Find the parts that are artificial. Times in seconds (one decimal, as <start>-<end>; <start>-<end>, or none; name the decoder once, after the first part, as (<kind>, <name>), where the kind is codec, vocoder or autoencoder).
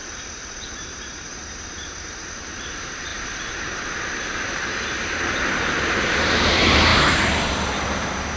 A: 0.5-8.4 (vocoder, BigVGAN v2)